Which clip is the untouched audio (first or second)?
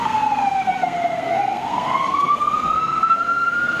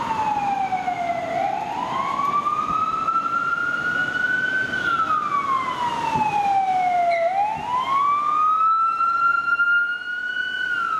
second